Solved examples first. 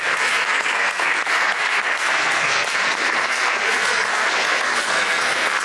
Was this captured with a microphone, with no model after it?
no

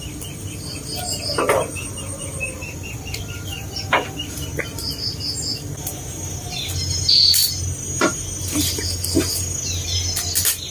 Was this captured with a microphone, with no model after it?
yes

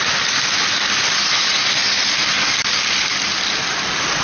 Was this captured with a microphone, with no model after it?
yes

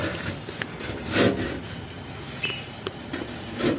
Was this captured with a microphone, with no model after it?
no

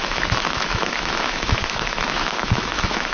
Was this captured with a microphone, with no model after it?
no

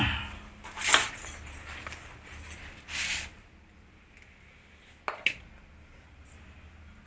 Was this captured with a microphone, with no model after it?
yes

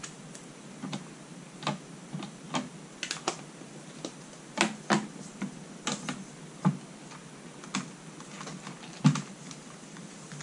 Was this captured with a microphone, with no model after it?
yes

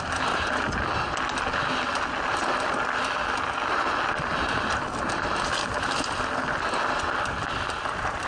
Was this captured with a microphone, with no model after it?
yes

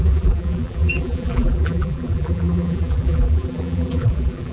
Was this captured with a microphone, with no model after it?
no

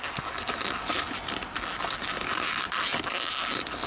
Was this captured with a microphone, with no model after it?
yes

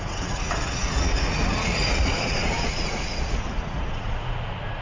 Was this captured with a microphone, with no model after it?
no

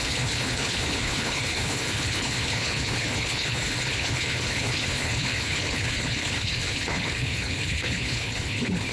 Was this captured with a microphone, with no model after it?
no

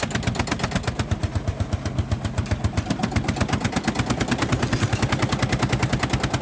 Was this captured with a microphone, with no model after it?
yes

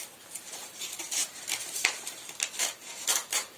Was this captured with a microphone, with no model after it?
no